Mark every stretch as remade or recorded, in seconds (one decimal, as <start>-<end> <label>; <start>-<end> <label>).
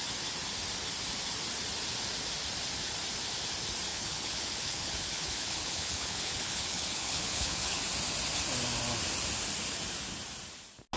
0.0-3.9 recorded; 3.9-7.8 remade; 7.8-11.0 recorded